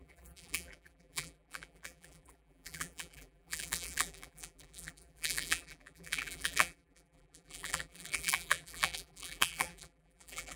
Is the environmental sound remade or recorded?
remade